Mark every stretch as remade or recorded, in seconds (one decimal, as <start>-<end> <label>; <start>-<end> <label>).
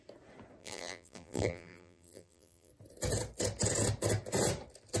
0.0-0.6 recorded; 0.6-2.7 remade; 2.7-5.0 recorded